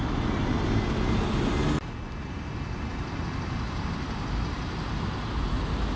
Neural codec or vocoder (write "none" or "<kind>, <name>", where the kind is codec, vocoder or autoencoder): none